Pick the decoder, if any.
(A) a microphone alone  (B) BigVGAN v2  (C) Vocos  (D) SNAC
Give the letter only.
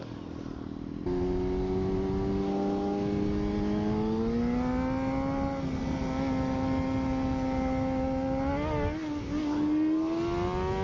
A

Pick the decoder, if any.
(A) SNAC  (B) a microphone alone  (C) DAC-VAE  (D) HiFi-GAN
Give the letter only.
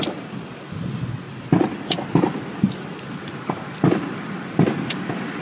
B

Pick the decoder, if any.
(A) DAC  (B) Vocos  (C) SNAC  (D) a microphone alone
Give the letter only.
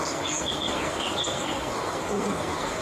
C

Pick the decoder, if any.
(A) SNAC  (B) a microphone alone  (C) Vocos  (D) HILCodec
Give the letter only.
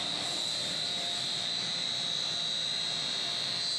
B